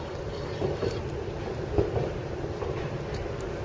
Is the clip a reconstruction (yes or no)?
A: no